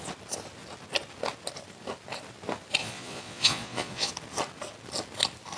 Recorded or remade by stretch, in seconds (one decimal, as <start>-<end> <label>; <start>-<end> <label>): 0.0-2.8 recorded; 2.8-4.1 remade; 4.1-5.6 recorded